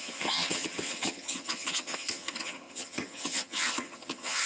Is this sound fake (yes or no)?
yes